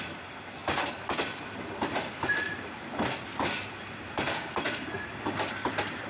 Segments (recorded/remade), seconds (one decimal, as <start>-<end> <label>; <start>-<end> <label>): 0.0-6.1 recorded